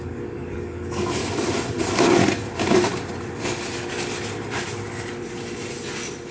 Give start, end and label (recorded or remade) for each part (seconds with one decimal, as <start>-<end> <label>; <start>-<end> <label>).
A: 0.0-1.2 remade; 1.2-1.8 recorded; 1.8-2.2 remade; 2.2-6.3 recorded